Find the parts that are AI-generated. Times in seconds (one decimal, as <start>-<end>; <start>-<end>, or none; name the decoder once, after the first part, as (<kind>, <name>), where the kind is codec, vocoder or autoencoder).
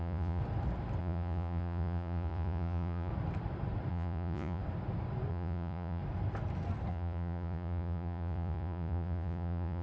0.0-0.4 (vocoder, Vocos); 1.0-3.1; 3.9-4.6; 5.3-6.0; 6.9-9.8